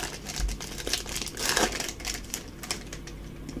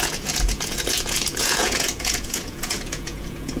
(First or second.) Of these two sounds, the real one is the first